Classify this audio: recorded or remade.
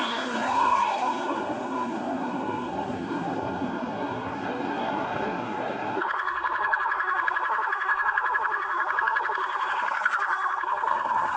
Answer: remade